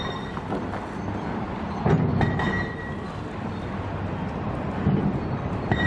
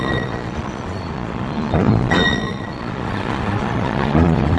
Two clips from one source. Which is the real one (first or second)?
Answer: first